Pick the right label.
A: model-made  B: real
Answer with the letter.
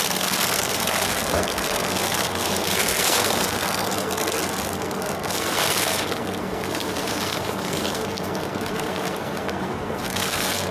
A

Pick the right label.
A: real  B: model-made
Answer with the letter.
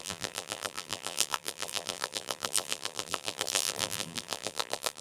B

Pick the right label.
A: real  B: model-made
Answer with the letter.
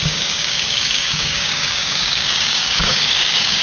B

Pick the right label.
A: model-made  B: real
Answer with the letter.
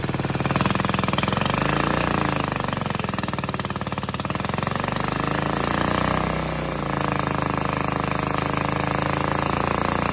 B